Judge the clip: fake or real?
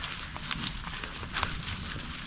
real